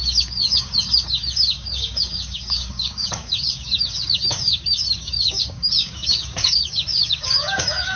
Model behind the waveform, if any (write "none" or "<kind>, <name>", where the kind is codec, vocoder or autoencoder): codec, DAC